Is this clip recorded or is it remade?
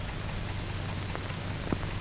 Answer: recorded